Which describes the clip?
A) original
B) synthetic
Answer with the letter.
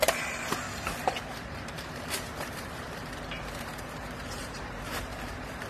B